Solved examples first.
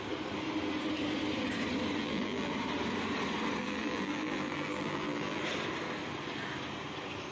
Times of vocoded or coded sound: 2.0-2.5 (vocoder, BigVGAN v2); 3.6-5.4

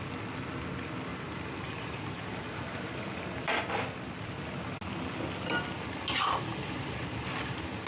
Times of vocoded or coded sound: 1.1-3.6 (vocoder, BigVGAN v2)

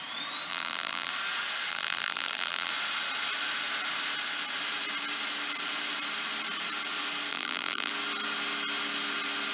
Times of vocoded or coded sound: 0.5-1.1 (vocoder, BigVGAN v2); 1.7-2.7; 7.3-7.9

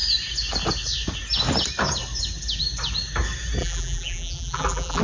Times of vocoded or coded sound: 3.6-5.0 (vocoder, BigVGAN v2)